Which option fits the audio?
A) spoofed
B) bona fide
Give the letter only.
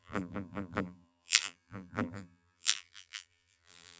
A